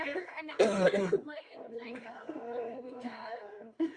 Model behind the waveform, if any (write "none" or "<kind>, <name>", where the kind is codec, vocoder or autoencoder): codec, SNAC